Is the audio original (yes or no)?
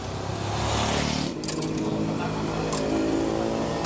yes